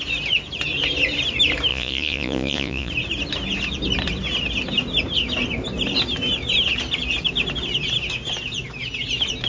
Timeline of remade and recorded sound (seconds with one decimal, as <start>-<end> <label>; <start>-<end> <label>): 0.0-1.7 recorded; 1.7-2.9 remade; 2.9-9.5 recorded